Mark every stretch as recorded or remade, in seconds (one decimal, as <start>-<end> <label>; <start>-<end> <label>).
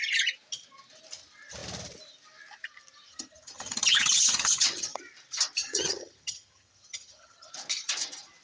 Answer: 0.0-3.1 recorded; 3.1-5.0 remade; 5.0-5.6 recorded; 5.6-7.5 remade; 7.5-8.4 recorded